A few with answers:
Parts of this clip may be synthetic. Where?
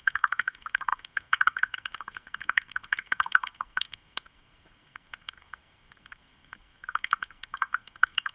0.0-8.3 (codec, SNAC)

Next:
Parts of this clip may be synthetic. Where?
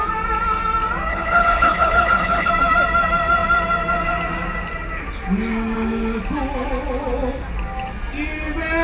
1.1-2.5 (codec, HILCodec)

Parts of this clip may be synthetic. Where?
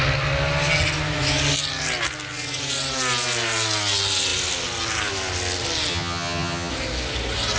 5.9-6.7 (vocoder, HiFi-GAN)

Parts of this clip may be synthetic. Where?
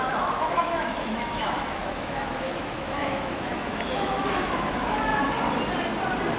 0.0-5.1 (autoencoder, DAC-VAE)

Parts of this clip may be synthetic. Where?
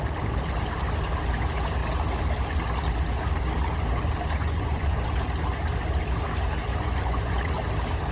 4.4-5.0 (vocoder, Vocos); 6.7-7.3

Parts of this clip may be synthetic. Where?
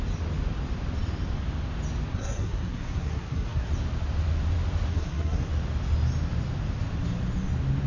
2.1-3.7 (codec, SNAC); 4.9-5.5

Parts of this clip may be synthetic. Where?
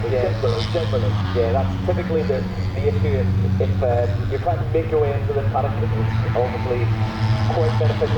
none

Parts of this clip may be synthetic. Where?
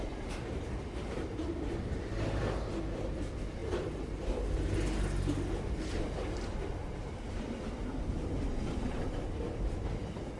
none